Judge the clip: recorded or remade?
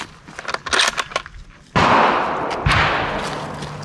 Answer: recorded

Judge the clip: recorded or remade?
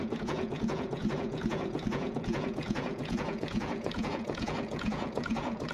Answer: remade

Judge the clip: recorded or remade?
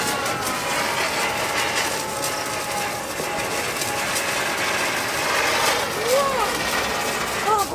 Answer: recorded